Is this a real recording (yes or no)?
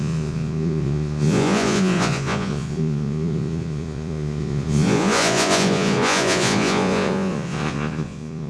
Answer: no